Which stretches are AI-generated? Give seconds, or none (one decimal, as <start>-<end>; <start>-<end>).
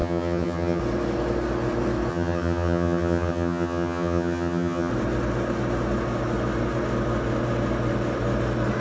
0.0-0.8; 2.1-4.9